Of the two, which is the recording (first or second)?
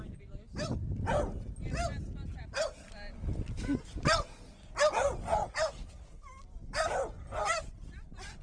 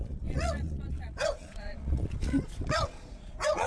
first